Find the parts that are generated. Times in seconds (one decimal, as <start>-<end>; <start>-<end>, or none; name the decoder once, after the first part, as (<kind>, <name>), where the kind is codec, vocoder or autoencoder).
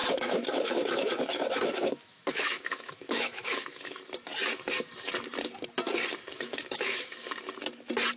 0.0-4.0 (autoencoder, DAC-VAE); 6.3-7.2